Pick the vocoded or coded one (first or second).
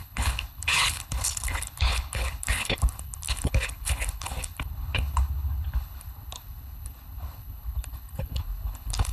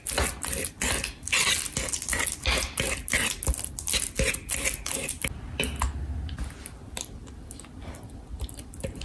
first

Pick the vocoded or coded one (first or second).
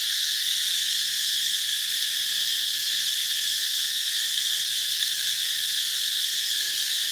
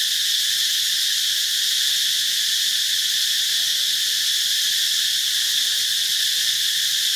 first